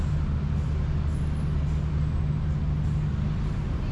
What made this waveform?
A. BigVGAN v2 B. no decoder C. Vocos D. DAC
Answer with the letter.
B